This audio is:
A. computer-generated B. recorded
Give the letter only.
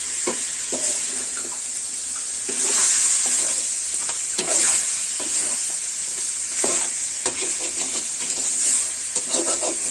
A